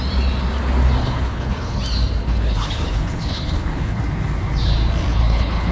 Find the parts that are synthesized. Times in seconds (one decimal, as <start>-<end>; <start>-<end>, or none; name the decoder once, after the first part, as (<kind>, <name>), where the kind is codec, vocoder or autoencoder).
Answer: 1.0-1.8 (codec, HILCodec); 2.2-4.0; 5.1-5.7